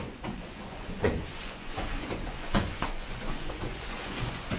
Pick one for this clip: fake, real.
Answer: fake